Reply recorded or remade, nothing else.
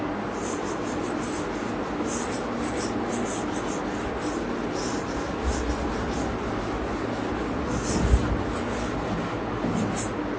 recorded